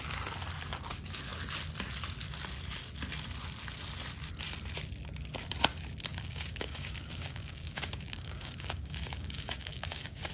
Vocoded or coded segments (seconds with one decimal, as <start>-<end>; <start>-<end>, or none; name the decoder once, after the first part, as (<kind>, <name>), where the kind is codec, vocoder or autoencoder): 6.1-10.3 (codec, DAC)